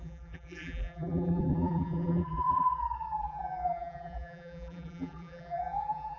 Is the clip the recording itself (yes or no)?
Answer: no